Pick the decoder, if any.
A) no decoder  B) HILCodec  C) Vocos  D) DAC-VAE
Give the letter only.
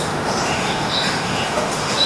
D